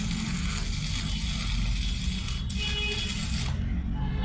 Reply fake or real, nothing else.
real